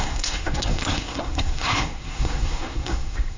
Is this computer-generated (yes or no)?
yes